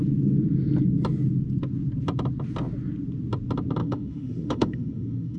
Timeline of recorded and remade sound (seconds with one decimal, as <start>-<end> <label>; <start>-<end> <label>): 0.0-3.8 recorded; 3.8-5.4 remade